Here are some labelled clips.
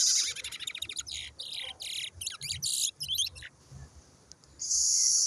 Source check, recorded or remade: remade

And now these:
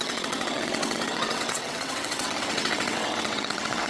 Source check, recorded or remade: remade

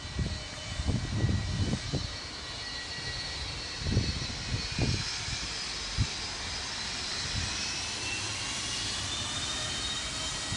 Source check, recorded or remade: recorded